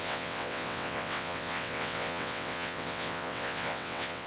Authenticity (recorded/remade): remade